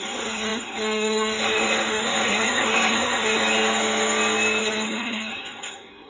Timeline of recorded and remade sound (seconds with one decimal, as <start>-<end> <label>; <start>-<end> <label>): 0.0-3.4 remade; 3.4-4.6 recorded; 4.6-6.1 remade